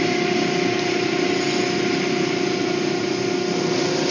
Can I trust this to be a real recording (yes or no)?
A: yes